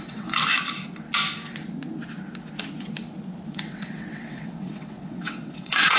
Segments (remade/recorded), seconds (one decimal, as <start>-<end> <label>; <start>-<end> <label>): 0.0-0.4 remade; 0.4-3.5 recorded; 3.5-6.0 remade